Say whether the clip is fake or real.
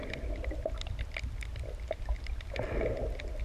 real